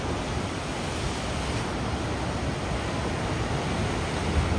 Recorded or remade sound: recorded